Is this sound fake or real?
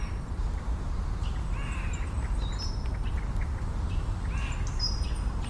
real